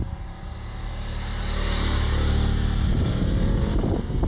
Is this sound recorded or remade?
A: remade